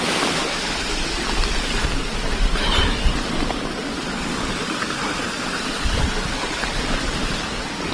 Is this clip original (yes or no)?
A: yes